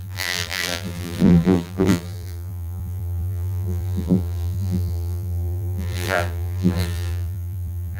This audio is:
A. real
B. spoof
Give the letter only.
B